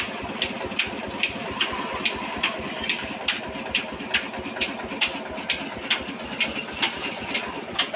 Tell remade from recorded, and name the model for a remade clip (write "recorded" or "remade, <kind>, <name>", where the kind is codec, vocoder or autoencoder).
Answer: recorded